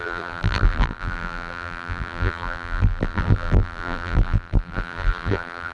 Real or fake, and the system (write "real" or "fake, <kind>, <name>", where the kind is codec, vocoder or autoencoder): fake, vocoder, BigVGAN v2